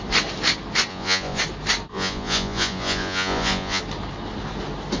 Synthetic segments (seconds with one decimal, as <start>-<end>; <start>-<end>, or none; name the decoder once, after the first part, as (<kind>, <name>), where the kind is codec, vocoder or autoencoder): 0.9-1.4 (vocoder, Vocos); 1.9-3.8

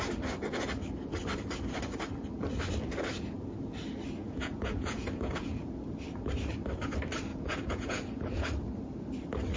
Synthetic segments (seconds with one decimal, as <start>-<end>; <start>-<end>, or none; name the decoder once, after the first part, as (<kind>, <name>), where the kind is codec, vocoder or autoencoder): 4.2-5.7 (vocoder, Vocos); 7.3-8.5